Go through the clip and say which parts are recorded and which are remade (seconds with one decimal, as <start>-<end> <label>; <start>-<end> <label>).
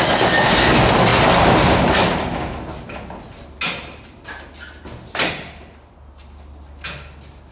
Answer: 0.0-7.5 recorded